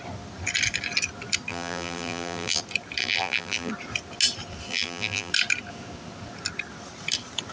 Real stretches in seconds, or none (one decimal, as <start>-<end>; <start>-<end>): 0.0-1.5; 2.6-3.0; 3.7-4.7; 5.3-7.5